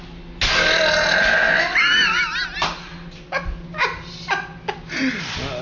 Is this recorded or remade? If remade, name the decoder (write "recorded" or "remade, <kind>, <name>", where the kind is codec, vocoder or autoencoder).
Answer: recorded